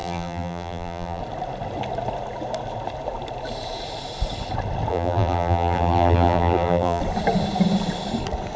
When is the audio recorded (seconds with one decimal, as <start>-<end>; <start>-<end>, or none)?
1.2-4.9; 7.0-8.6